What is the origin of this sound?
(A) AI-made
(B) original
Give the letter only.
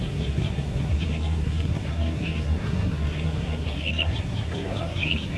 A